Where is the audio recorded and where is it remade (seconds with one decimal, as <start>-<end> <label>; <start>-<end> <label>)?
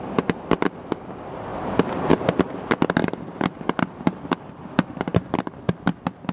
0.0-3.0 recorded; 3.0-3.6 remade; 3.6-6.3 recorded